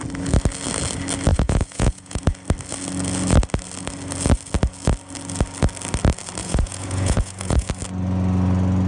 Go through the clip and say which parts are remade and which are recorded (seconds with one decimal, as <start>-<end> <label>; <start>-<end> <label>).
0.0-1.3 recorded; 1.3-2.2 remade; 2.2-6.4 recorded; 6.4-7.7 remade; 7.7-8.9 recorded